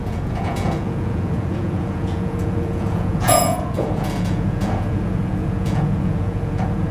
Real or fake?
fake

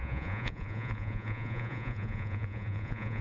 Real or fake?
fake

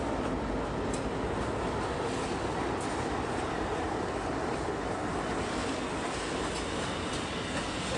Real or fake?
real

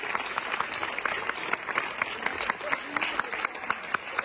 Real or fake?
real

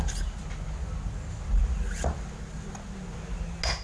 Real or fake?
real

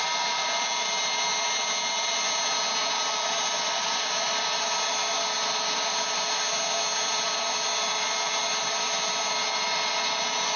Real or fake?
real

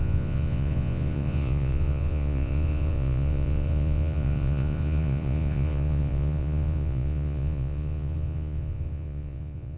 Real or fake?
fake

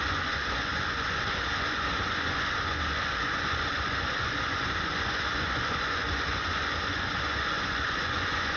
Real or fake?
fake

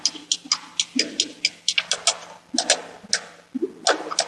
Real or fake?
real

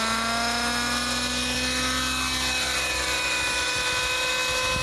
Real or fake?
real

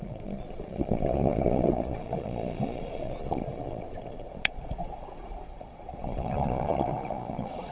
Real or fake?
fake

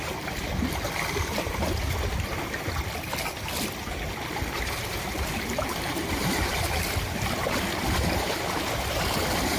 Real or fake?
real